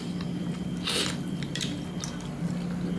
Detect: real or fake real